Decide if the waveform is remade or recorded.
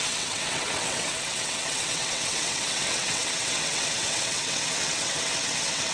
remade